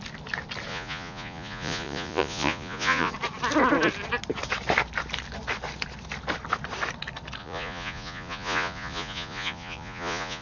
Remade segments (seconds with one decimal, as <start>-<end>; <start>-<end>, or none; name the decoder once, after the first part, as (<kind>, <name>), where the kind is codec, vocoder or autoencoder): 0.7-3.1 (vocoder, Vocos); 7.4-10.4